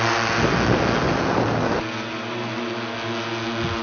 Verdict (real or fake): real